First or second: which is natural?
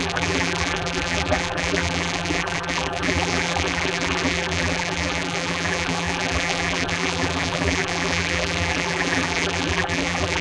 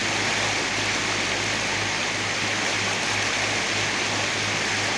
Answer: second